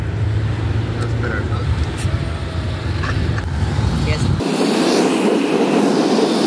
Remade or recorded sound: recorded